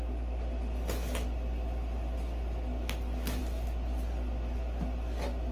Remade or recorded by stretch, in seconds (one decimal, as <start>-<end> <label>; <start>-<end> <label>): 0.0-5.5 recorded